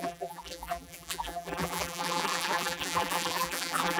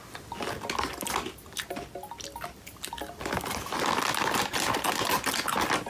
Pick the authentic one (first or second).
second